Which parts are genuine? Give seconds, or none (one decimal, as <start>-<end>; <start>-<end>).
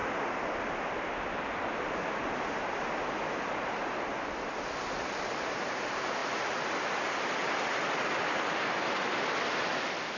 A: 0.0-10.2